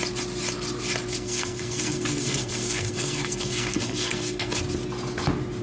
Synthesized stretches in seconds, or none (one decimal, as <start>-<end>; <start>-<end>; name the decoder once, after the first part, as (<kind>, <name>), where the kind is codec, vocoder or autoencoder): 1.1-4.5 (codec, SNAC)